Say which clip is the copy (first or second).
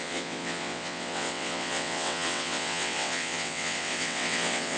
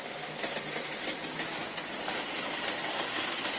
first